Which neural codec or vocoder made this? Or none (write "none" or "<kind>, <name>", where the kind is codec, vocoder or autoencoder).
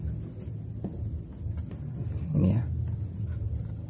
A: none